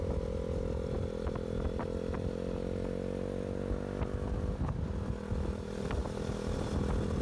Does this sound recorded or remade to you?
recorded